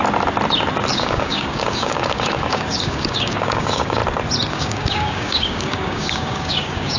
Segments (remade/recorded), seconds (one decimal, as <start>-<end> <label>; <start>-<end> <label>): 0.0-0.9 recorded; 0.9-4.0 remade; 4.0-4.5 recorded; 4.5-7.0 remade